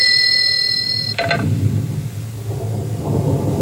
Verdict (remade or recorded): recorded